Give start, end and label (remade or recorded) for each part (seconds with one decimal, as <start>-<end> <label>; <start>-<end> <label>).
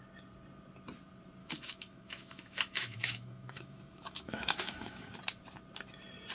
0.0-1.4 recorded; 1.4-5.2 remade; 5.2-6.3 recorded